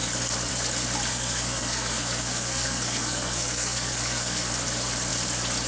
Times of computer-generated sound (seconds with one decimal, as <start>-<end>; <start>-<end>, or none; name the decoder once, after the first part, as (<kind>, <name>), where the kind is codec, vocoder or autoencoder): 1.1-4.5 (codec, SNAC)